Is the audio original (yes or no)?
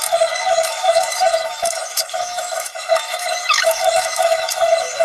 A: no